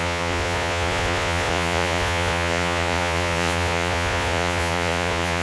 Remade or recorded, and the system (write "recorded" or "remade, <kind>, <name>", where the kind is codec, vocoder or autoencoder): remade, vocoder, Vocos